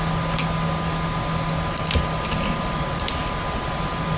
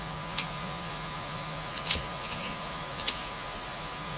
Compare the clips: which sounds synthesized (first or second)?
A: second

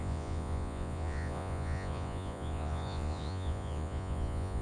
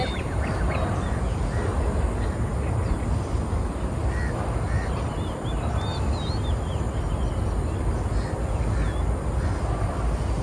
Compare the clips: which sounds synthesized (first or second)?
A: first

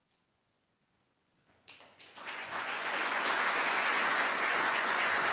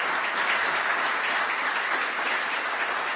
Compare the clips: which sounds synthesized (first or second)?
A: first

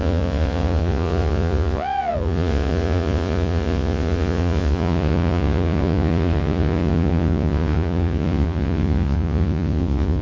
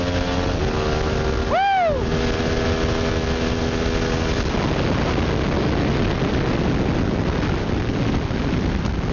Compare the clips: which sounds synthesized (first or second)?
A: first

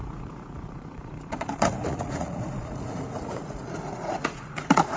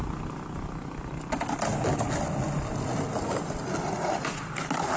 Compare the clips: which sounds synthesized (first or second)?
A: first